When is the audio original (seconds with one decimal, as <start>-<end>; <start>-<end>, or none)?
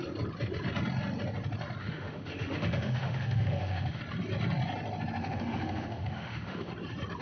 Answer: 0.0-1.8; 4.0-5.2; 6.7-7.2